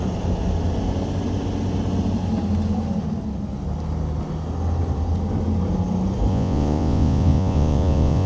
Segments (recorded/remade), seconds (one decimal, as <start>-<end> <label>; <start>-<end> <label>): 0.0-6.3 recorded; 6.3-8.3 remade